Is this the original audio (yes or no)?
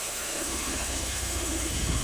no